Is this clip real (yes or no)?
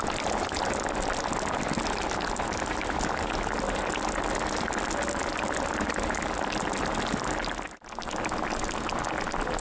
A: yes